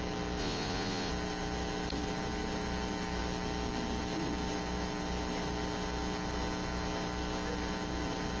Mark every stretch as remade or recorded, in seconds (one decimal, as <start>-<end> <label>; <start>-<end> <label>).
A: 0.0-0.4 recorded; 0.4-1.1 remade; 1.1-8.4 recorded